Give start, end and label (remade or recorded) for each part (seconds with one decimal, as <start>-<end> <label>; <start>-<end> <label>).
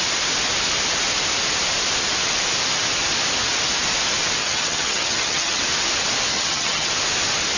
0.0-4.4 recorded; 4.4-5.6 remade; 5.6-6.3 recorded; 6.3-6.9 remade; 6.9-7.6 recorded